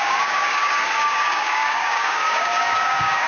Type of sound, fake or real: fake